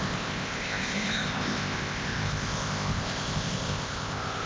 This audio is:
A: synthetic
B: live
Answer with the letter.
A